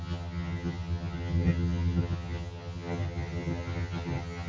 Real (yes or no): no